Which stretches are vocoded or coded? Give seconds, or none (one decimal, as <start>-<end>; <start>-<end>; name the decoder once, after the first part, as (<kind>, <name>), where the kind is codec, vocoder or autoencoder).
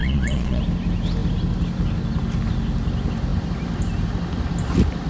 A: 0.0-0.6 (vocoder, Vocos)